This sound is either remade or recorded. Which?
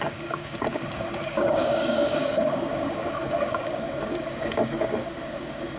remade